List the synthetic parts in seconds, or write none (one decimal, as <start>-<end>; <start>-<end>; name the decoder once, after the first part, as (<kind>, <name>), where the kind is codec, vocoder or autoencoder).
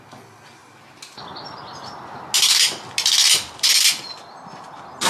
none